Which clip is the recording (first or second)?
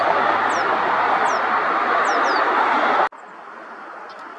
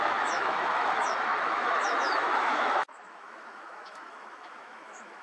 first